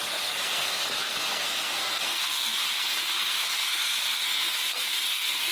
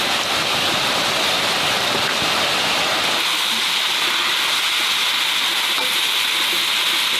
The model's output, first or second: first